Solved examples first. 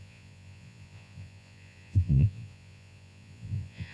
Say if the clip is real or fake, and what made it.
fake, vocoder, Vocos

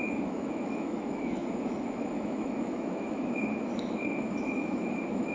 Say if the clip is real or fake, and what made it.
fake, autoencoder, DAC-VAE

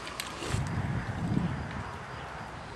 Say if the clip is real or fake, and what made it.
fake, vocoder, BigVGAN v2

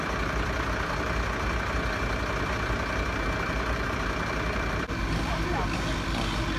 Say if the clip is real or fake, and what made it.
real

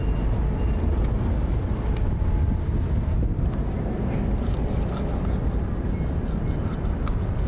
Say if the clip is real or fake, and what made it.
real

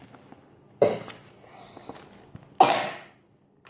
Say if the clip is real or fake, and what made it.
real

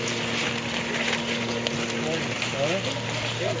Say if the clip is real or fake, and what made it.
real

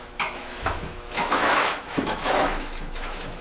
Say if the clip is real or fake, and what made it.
fake, autoencoder, DAC-VAE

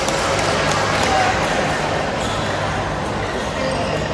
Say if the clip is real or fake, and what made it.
real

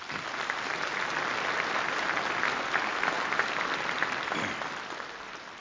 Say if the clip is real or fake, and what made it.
real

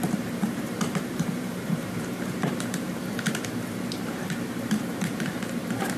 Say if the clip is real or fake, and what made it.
fake, vocoder, BigVGAN v2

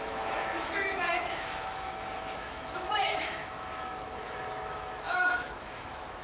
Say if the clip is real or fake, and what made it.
fake, autoencoder, DAC-VAE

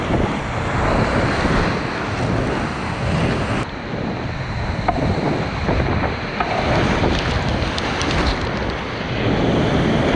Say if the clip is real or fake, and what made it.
real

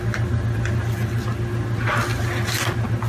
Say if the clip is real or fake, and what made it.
real